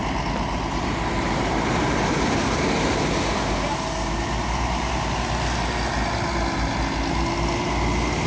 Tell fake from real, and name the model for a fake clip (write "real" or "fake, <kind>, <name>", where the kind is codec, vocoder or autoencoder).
real